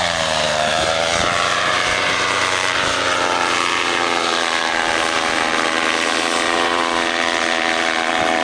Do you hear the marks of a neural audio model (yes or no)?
yes